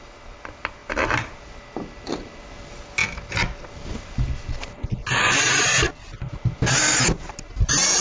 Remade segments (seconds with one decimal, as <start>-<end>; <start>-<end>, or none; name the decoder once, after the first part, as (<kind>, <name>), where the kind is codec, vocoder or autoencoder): none